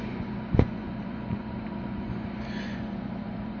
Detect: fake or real fake